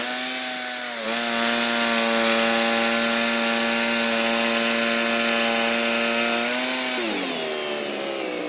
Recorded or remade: recorded